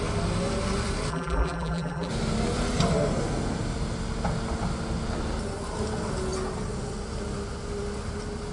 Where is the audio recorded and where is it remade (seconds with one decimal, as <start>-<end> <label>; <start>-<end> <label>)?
0.0-1.1 recorded; 1.1-2.1 remade; 2.1-8.5 recorded